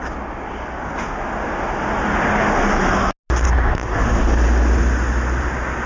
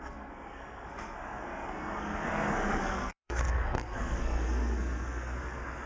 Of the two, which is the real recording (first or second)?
first